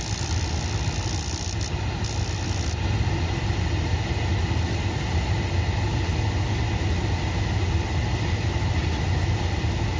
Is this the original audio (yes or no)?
yes